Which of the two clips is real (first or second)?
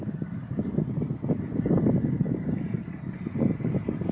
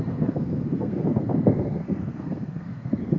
first